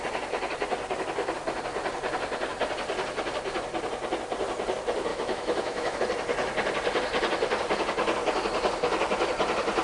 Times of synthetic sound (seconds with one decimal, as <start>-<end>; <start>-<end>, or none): 5.1-6.0